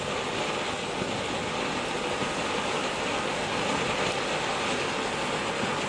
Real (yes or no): yes